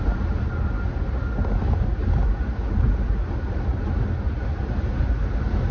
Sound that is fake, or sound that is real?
real